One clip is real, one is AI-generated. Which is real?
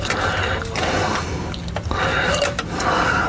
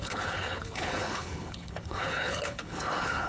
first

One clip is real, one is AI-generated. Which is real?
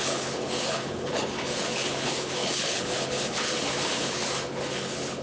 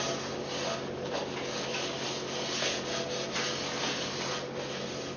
second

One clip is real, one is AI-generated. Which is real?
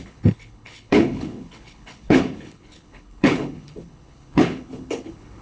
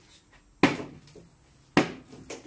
second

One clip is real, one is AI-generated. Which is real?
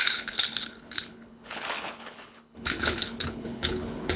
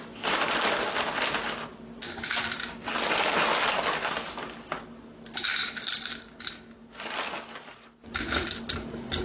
second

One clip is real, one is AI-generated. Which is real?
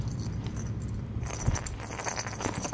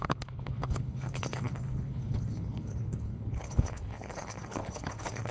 first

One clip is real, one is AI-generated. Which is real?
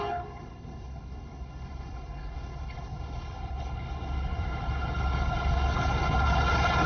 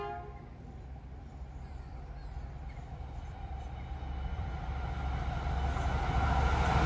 second